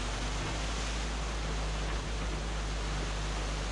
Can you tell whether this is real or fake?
real